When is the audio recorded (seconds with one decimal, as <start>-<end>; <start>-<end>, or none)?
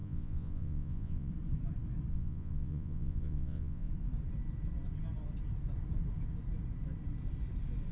1.3-2.1; 3.9-7.9